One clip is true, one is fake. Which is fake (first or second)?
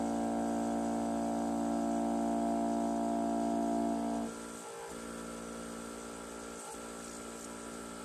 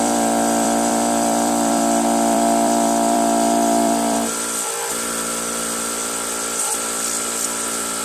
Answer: second